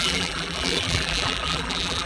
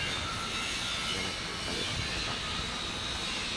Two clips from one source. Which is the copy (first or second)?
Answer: first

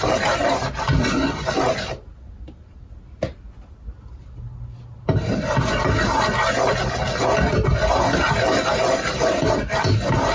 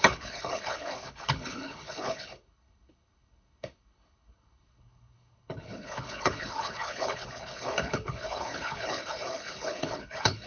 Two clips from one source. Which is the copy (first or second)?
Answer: second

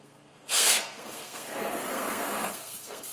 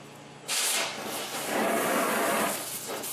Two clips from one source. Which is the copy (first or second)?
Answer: first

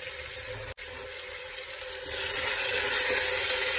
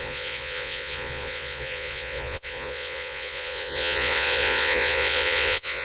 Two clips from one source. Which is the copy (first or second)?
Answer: second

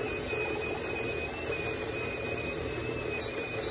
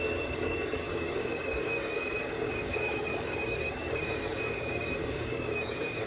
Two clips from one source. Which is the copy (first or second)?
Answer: second